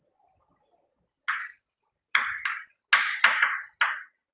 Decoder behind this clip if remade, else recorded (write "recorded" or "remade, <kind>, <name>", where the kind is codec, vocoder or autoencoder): recorded